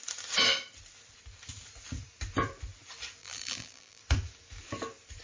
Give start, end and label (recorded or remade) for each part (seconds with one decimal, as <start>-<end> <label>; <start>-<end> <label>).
0.0-3.2 recorded; 3.2-4.0 remade; 4.0-5.2 recorded